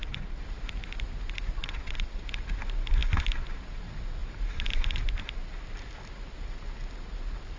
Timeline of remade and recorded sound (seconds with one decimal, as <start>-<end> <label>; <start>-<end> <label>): 0.0-1.6 recorded; 1.6-2.2 remade; 2.2-7.6 recorded